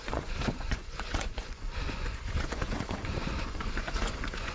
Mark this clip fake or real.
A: fake